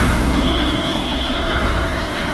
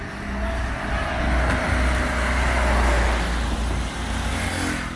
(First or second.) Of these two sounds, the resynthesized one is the first